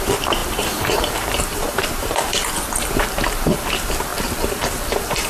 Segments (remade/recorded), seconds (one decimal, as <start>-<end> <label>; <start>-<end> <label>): 0.0-2.3 remade; 2.3-2.9 recorded; 2.9-5.3 remade